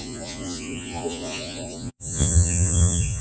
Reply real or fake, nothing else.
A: fake